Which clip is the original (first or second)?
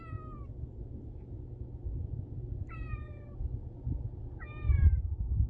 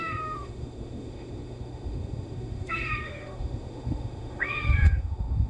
first